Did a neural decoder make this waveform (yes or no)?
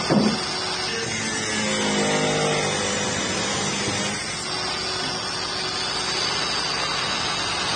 no